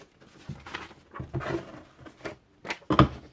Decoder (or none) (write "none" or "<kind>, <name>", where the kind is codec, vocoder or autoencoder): none